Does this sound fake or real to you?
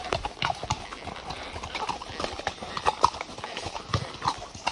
real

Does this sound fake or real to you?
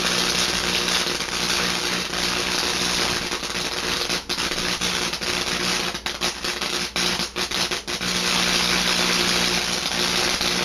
real